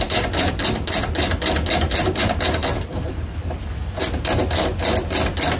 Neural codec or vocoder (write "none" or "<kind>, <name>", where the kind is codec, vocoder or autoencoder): none